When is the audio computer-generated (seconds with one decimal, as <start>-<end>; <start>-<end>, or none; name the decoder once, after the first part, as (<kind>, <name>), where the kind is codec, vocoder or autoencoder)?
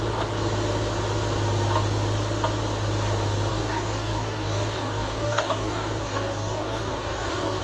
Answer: 3.5-7.6 (codec, DAC)